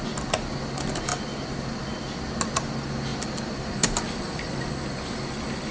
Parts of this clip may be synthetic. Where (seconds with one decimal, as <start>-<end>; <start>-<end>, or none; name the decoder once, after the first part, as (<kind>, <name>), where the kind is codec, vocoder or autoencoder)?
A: 3.1-4.7 (vocoder, BigVGAN v2)